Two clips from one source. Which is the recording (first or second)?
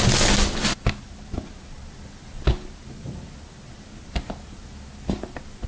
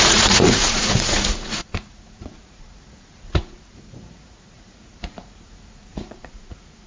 first